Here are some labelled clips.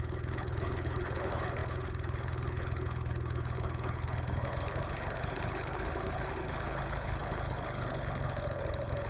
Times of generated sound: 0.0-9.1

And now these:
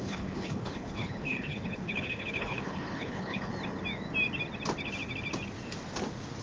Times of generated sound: 0.0-3.5

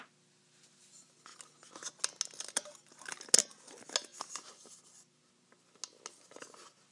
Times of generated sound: none